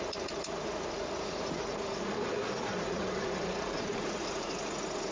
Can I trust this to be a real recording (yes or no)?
no